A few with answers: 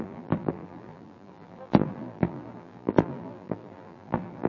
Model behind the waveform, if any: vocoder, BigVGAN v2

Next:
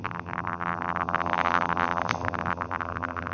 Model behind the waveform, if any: vocoder, BigVGAN v2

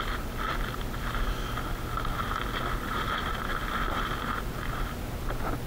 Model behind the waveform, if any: none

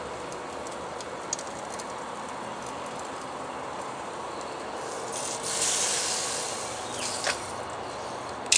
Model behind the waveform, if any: none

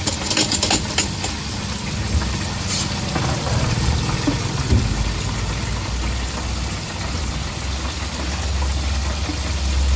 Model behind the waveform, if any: none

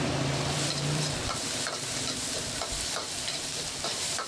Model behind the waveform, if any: vocoder, BigVGAN v2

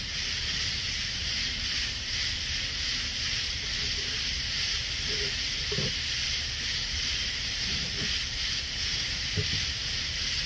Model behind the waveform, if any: vocoder, BigVGAN v2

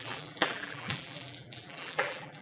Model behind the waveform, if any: vocoder, BigVGAN v2